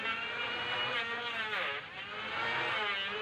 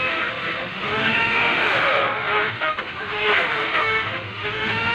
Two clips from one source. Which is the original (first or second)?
first